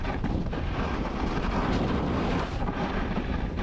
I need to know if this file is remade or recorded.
remade